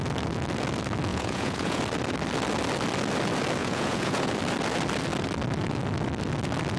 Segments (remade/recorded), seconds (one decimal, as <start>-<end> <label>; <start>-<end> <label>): 0.0-1.1 recorded; 1.1-1.8 remade; 1.8-3.6 recorded; 3.6-4.3 remade; 4.3-6.8 recorded